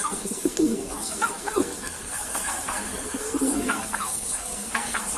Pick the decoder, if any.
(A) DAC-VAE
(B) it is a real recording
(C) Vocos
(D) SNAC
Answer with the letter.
D